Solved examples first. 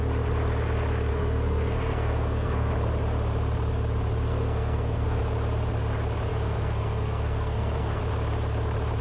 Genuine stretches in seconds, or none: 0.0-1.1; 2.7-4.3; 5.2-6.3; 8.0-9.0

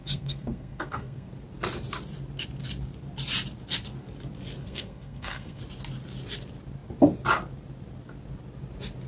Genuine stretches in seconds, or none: 1.3-4.6; 5.6-9.1

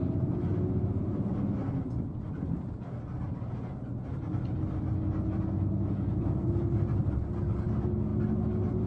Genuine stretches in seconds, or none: 0.0-8.9